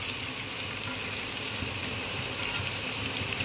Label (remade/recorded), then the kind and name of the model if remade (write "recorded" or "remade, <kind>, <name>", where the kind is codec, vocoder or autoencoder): remade, vocoder, BigVGAN v2